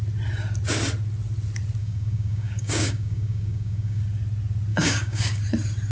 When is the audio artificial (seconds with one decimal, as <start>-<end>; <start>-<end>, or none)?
1.8-4.0; 4.7-5.4